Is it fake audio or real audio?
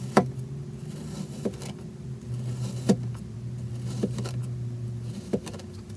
real